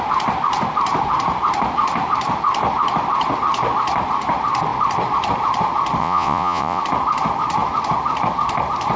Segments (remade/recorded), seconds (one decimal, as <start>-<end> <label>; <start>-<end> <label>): 0.0-6.0 recorded; 6.0-6.8 remade; 6.8-9.0 recorded